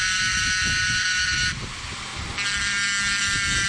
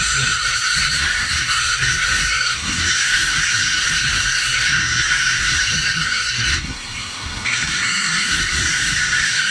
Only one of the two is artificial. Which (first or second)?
second